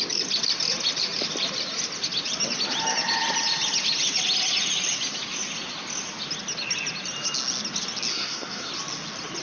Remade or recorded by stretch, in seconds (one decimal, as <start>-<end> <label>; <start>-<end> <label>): 0.0-8.1 recorded; 8.1-8.7 remade; 8.7-9.4 recorded